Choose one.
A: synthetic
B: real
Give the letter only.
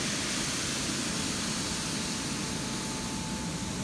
B